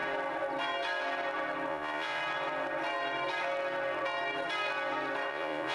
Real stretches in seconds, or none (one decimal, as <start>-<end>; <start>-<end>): 0.0-1.7; 2.2-5.3